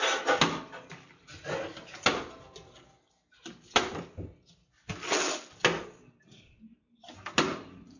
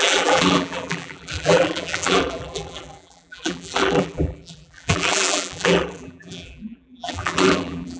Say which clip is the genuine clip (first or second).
first